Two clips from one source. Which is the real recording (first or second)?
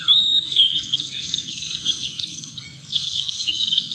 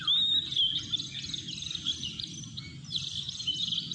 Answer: second